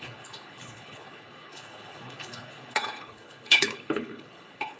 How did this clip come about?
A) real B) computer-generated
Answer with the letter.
B